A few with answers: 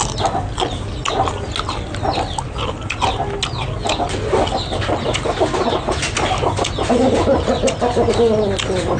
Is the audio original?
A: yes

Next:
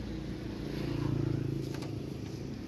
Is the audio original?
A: yes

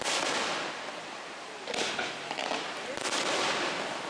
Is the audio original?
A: yes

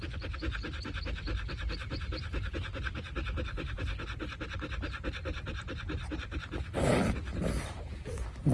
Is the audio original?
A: yes